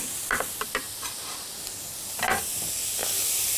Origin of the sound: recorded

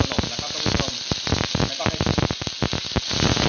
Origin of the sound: recorded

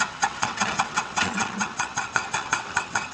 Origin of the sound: remade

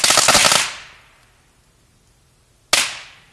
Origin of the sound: recorded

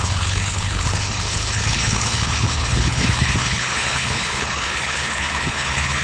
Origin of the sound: remade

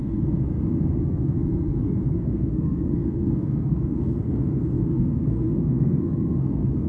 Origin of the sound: remade